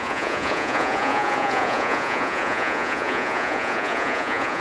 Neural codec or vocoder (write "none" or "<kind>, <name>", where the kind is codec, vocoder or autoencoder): vocoder, Vocos